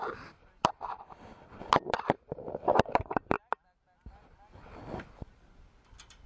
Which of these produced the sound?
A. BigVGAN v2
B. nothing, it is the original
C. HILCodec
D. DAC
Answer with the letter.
B